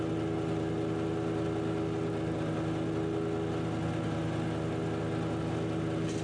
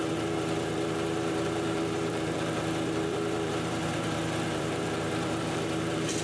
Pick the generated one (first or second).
second